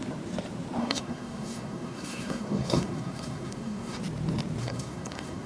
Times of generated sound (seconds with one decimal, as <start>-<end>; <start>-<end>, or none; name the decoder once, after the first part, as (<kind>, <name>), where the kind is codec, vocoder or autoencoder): 0.8-4.0 (codec, SNAC); 4.6-5.5